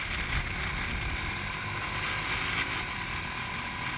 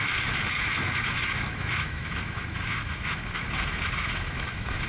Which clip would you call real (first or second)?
first